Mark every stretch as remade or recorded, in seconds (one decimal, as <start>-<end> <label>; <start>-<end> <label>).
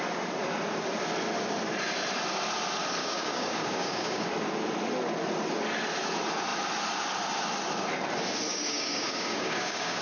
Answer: 0.0-3.0 recorded; 3.0-4.3 remade; 4.3-8.5 recorded; 8.5-10.0 remade